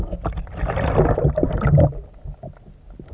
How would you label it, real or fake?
real